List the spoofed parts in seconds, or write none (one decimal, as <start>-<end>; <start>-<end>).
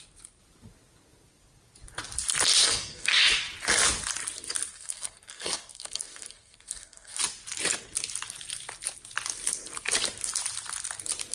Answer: 2.6-3.3; 4.7-7.2